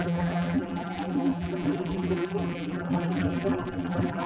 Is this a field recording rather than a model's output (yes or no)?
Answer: no